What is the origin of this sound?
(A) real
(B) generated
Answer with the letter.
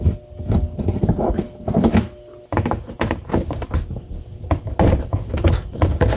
A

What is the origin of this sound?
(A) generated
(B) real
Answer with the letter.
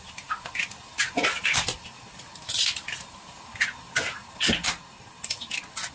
B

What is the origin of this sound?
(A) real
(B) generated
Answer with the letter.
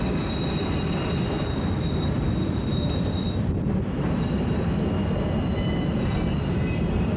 A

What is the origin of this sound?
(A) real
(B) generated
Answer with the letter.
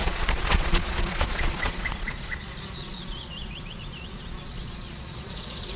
B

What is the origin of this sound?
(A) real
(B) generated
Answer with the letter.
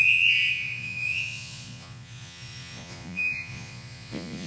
B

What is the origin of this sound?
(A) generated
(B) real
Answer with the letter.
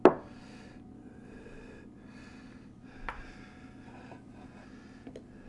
B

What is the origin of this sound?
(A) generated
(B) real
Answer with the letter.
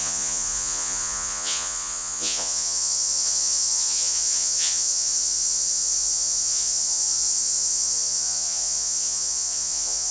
A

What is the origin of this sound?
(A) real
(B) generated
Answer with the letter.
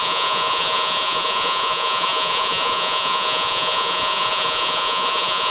B